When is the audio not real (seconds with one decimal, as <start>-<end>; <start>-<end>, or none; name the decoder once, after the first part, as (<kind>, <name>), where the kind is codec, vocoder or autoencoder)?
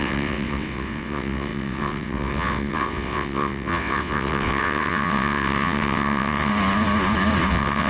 0.0-6.5 (vocoder, WaveNeXt); 7.5-7.9